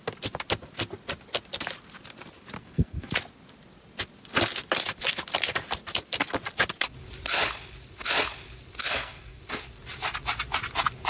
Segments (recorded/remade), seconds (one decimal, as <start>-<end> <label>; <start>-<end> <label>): 0.0-2.6 recorded; 2.6-3.1 remade; 3.1-8.8 recorded; 8.8-9.4 remade; 9.4-11.1 recorded